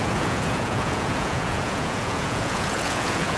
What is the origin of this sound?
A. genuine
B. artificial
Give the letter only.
B